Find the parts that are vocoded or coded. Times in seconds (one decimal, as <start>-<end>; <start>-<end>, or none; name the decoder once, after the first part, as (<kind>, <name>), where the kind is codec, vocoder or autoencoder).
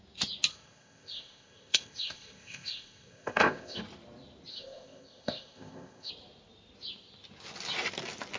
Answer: 0.5-3.8 (codec, ZipCodec); 4.5-6.1